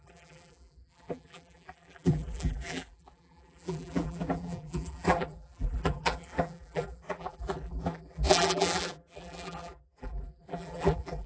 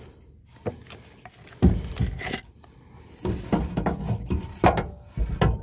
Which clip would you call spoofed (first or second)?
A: first